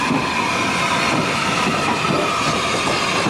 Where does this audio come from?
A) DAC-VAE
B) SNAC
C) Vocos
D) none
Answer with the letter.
D